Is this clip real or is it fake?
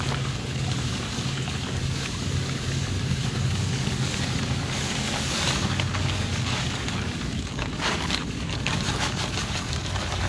fake